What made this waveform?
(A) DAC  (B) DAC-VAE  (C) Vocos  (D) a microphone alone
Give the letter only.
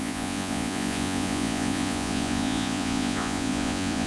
C